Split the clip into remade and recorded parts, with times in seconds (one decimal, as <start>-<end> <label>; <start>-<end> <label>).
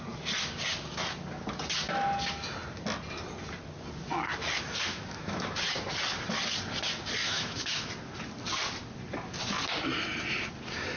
0.0-4.9 recorded; 4.9-5.6 remade; 5.6-7.2 recorded; 7.2-7.9 remade; 7.9-11.0 recorded